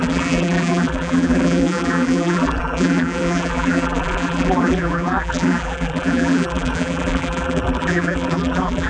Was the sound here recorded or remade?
remade